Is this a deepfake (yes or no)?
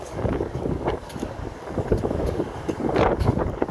yes